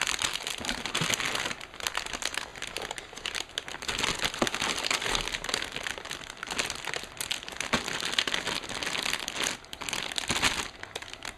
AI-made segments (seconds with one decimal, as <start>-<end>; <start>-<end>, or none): none